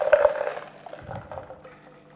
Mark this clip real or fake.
real